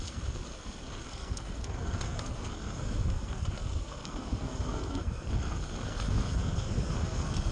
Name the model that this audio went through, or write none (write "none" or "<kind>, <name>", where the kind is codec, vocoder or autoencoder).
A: codec, SNAC